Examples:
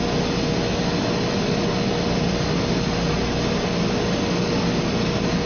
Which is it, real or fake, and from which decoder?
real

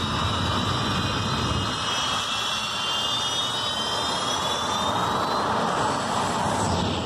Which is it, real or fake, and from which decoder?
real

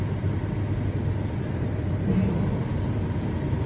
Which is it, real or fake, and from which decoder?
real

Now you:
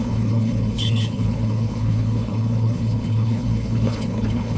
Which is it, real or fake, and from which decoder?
fake, codec, HILCodec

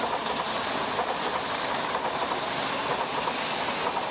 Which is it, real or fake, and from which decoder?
real